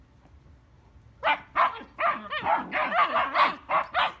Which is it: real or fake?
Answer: real